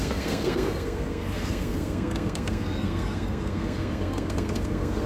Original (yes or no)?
no